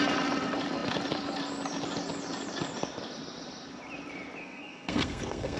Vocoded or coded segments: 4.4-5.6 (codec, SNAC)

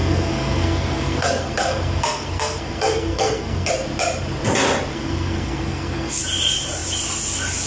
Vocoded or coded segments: 0.0-3.7 (codec, SNAC); 4.9-6.2

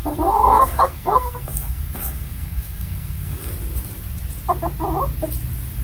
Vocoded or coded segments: 0.0-3.5 (codec, SNAC)

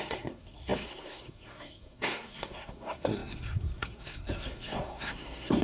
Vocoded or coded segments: 0.0-5.6 (codec, SNAC)

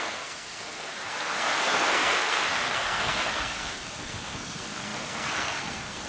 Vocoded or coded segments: 0.0-6.1 (codec, SNAC)

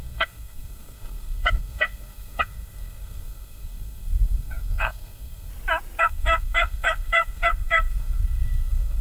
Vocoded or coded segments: 0.0-5.5 (codec, SNAC); 6.0-9.0

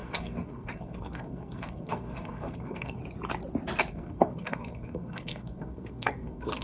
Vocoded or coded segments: 0.0-3.0 (codec, SNAC); 3.9-6.6